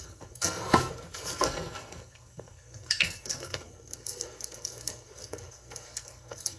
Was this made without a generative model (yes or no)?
no